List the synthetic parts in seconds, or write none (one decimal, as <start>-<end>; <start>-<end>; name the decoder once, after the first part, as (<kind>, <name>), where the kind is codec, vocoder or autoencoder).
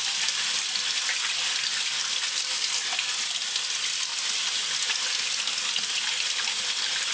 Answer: none